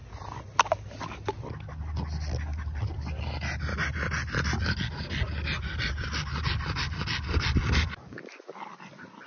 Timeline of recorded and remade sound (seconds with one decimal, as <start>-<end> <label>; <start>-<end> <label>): 0.0-9.3 recorded